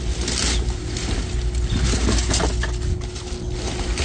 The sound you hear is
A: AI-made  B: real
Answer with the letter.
B